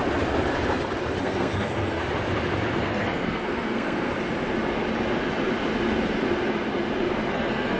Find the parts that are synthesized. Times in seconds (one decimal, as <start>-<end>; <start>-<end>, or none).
1.2-2.0; 2.8-4.1; 7.3-7.8